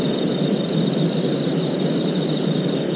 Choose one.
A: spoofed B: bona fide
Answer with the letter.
B